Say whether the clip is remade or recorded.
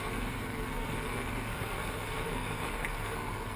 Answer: remade